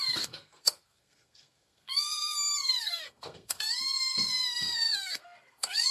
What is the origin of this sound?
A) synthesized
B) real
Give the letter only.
A